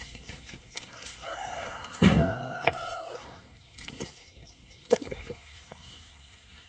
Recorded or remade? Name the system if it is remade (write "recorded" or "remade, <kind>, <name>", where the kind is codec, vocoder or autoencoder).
remade, codec, SNAC